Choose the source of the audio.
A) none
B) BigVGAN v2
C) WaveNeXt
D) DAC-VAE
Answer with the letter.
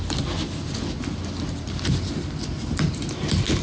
A